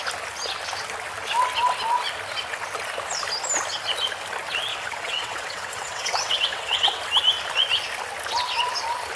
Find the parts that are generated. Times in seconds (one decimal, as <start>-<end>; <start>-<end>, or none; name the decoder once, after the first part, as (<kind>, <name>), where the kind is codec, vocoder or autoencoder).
4.7-7.1 (vocoder, WaveNeXt)

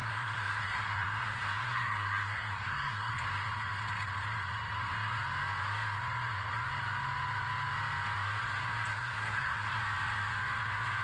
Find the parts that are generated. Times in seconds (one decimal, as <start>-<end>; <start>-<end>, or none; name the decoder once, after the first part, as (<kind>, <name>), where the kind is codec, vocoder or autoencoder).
0.0-3.1 (codec, SNAC); 8.9-9.8

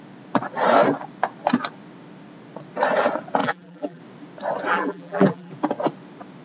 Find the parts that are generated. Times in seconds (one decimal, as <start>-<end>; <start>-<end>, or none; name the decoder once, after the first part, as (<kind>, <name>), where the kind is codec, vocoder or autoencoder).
3.4-4.0 (vocoder, BigVGAN v2); 4.7-5.5

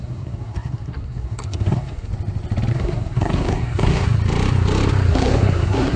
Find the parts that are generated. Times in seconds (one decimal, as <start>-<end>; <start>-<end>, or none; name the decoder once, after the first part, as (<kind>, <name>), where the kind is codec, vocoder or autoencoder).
0.0-2.1 (codec, SNAC); 2.7-4.2; 5.1-6.0

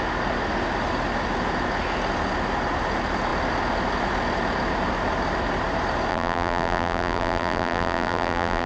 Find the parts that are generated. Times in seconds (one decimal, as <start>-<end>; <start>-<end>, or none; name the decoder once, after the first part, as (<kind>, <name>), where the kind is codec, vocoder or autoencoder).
6.1-8.7 (vocoder, BigVGAN v2)

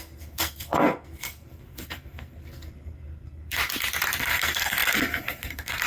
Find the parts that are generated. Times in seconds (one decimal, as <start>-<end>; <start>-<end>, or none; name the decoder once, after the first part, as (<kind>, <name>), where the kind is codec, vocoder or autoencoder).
0.0-3.6 (codec, SNAC); 4.2-5.9

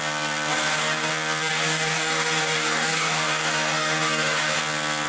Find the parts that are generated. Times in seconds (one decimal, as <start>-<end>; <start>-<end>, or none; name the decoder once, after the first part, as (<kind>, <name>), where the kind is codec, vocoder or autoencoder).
0.5-1.1 (codec, DAC); 1.5-4.6

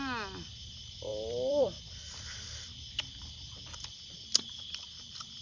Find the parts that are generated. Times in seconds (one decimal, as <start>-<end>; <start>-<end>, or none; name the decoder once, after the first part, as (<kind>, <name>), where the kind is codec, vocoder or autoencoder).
1.1-1.8 (vocoder, BigVGAN v2)